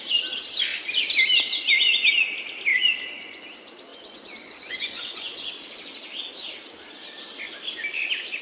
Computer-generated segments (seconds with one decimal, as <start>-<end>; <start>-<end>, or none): 2.7-3.4; 3.9-5.5